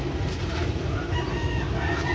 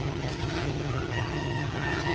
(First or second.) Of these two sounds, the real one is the first